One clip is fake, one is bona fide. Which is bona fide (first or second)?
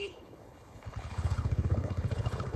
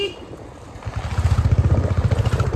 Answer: second